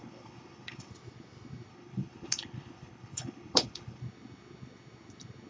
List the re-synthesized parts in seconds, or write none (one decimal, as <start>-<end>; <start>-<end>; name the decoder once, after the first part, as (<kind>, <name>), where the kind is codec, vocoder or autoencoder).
0.0-0.9 (codec, HILCodec); 1.7-4.0